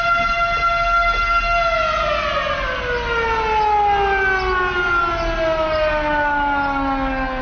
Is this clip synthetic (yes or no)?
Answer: no